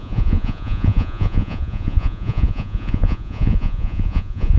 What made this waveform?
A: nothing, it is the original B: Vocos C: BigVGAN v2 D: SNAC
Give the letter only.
B